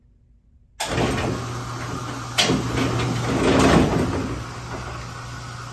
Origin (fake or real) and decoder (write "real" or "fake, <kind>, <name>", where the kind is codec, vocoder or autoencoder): real